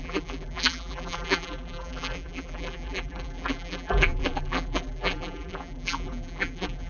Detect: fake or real fake